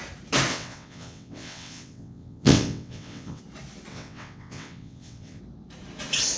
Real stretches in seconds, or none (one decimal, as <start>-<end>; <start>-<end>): 0.0-0.5; 3.4-3.9; 5.4-6.4